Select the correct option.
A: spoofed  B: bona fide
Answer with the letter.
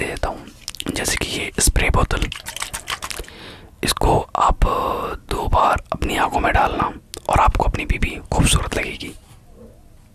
B